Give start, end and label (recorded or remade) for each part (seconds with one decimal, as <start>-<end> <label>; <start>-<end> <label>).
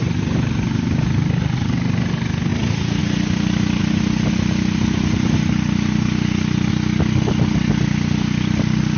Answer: 0.0-9.0 recorded